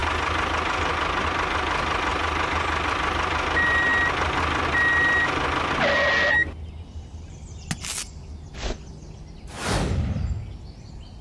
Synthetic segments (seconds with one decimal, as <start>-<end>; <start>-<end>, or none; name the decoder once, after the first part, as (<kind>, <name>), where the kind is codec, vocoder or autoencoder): 0.0-0.5 (vocoder, BigVGAN v2); 2.1-2.9